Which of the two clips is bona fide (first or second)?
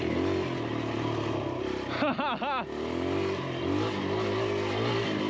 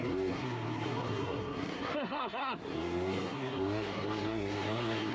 first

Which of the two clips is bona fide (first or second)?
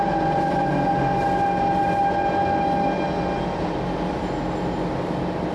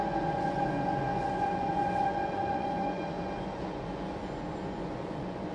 first